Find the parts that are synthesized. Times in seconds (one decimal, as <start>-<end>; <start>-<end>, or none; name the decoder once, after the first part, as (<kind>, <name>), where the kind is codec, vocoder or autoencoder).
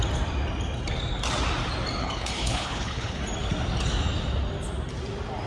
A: 2.0-3.2 (codec, HILCodec)